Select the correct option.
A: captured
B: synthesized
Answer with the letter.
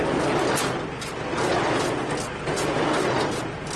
A